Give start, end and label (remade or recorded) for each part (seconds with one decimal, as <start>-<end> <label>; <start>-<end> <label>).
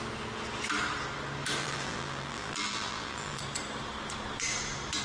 0.0-1.6 recorded; 1.6-3.4 remade; 3.4-5.0 recorded